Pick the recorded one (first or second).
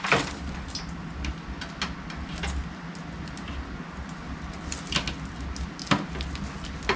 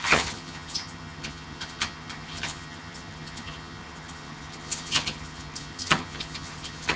first